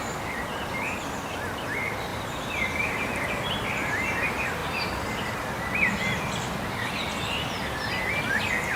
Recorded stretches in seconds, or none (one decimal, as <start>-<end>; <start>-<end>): 0.0-2.1; 3.3-8.8